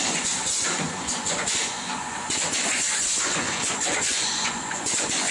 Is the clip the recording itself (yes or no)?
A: no